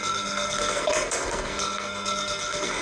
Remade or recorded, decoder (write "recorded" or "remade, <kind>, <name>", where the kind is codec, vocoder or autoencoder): remade, codec, SNAC